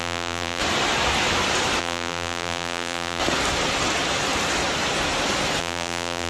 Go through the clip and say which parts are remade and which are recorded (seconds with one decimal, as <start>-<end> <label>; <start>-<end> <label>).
0.0-0.6 remade; 0.6-1.8 recorded; 1.8-3.2 remade; 3.2-5.6 recorded; 5.6-6.3 remade